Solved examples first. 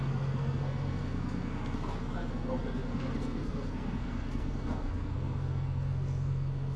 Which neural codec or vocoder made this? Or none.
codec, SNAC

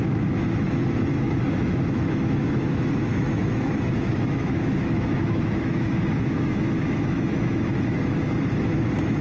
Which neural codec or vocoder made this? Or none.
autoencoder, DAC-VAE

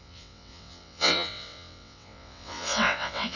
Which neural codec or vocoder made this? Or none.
vocoder, WaveNeXt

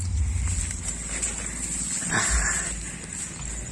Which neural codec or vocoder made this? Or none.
none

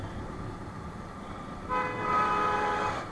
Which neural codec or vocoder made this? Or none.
vocoder, BigVGAN v2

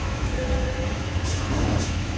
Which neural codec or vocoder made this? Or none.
autoencoder, DAC-VAE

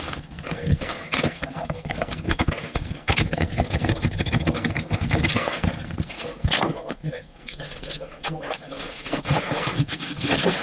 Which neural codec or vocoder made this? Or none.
codec, SNAC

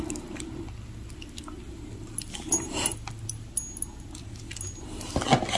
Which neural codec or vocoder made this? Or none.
none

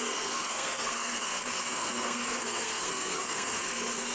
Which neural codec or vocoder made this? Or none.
codec, SNAC